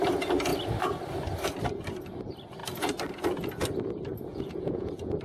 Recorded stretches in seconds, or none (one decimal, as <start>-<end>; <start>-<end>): 0.0-4.3